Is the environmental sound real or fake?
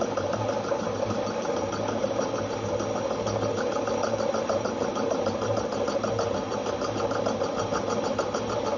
real